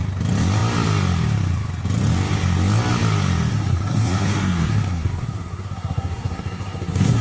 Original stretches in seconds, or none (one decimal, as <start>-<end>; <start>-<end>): 0.0-3.5